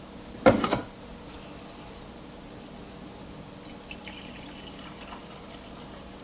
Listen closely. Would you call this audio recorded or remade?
recorded